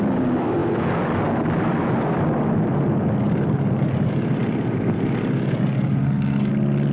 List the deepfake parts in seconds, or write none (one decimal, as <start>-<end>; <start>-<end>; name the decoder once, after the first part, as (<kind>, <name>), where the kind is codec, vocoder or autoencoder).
5.9-6.5 (codec, SNAC)